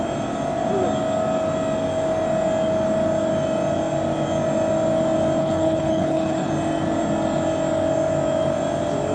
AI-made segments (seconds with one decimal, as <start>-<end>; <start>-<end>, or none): 5.4-6.5